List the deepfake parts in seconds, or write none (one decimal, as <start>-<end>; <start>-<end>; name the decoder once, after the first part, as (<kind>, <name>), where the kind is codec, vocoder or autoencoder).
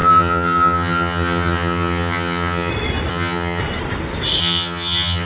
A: 0.0-2.7 (vocoder, HiFi-GAN); 3.1-3.6; 4.4-5.3